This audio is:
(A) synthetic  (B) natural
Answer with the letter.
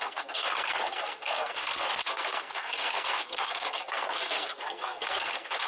A